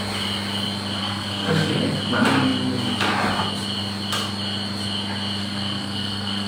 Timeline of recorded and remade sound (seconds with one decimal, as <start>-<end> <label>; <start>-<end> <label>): 0.0-1.0 recorded; 1.0-1.8 remade; 1.8-5.4 recorded; 5.4-6.5 remade

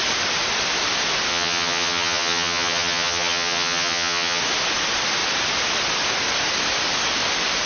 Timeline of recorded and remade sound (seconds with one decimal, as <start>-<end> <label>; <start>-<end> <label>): 0.0-1.3 recorded; 1.3-4.4 remade; 4.4-7.7 recorded

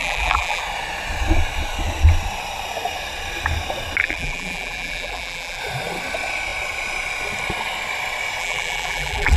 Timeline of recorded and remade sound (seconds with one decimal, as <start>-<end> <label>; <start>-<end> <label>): 0.0-0.6 remade; 0.6-4.0 recorded; 4.0-5.6 remade; 5.6-8.4 recorded; 8.4-9.4 remade